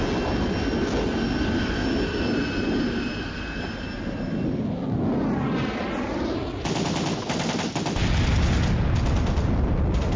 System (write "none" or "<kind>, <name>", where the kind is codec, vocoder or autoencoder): none